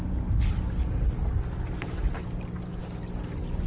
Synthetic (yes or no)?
no